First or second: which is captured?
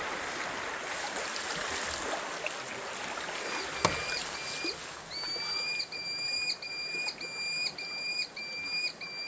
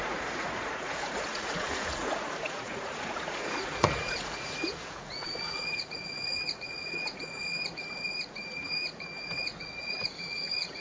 first